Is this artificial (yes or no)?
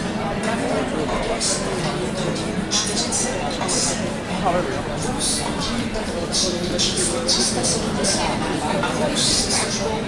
no